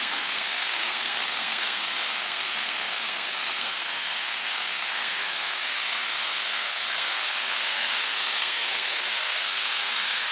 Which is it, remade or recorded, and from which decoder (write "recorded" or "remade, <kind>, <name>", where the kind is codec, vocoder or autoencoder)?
remade, codec, SNAC